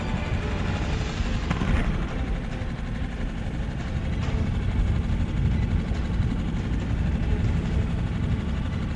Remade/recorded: recorded